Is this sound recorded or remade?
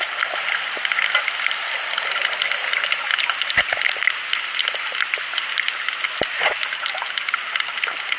recorded